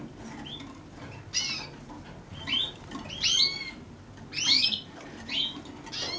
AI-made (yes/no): no